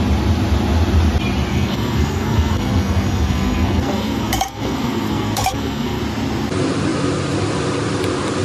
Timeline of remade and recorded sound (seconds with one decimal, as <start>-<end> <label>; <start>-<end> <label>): 0.0-1.5 recorded; 1.5-6.0 remade; 6.0-8.4 recorded